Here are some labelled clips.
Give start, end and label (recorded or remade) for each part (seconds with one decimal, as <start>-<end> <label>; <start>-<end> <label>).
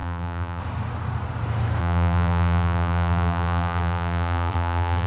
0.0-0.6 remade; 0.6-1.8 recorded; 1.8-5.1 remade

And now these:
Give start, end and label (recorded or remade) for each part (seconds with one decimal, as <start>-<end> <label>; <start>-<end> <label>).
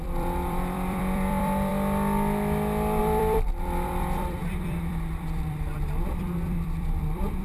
0.0-1.7 remade; 1.7-3.0 recorded; 3.0-7.4 remade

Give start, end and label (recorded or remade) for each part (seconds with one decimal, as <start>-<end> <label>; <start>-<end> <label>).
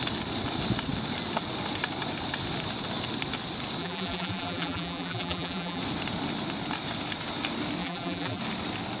0.0-3.8 recorded; 3.8-5.8 remade; 5.8-7.8 recorded; 7.8-8.4 remade; 8.4-9.0 recorded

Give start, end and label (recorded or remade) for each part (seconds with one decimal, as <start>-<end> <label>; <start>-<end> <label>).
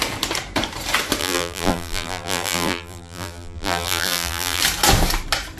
0.0-1.2 recorded; 1.2-4.6 remade; 4.6-5.6 recorded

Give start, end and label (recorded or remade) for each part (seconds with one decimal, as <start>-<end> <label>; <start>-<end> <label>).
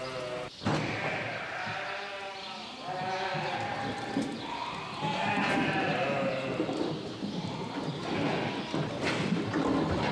0.0-4.3 recorded; 4.3-5.2 remade; 5.2-10.1 recorded